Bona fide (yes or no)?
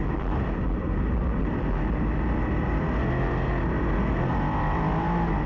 no